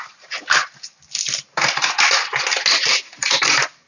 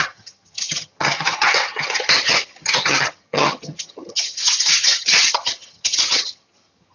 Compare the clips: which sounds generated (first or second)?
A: second